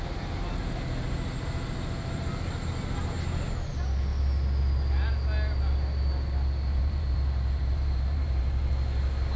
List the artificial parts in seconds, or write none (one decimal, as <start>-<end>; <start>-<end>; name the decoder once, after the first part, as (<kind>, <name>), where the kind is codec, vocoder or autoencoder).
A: 6.7-8.7 (vocoder, BigVGAN v2)